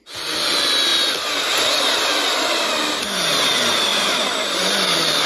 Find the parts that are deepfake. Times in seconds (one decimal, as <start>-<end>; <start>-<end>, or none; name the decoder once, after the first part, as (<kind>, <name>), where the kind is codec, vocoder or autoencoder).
3.9-5.3 (vocoder, BigVGAN v2)